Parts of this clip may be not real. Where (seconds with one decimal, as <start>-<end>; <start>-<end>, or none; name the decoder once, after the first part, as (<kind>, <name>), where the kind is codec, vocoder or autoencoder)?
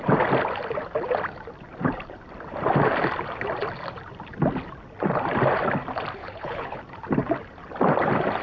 6.2-6.8 (codec, HILCodec)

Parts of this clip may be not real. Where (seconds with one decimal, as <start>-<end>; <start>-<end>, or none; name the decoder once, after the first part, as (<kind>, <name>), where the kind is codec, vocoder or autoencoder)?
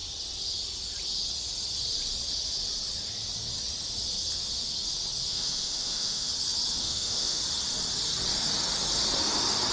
5.3-6.3 (autoencoder, DAC-VAE); 6.8-7.4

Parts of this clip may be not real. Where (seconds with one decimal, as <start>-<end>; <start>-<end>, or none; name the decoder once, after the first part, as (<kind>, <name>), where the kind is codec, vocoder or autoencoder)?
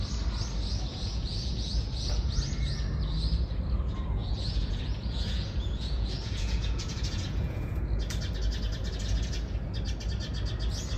0.9-2.4 (vocoder, Vocos); 4.2-7.9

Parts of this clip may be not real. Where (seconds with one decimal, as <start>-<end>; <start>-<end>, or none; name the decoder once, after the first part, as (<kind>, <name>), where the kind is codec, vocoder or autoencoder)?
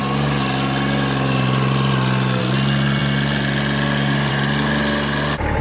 none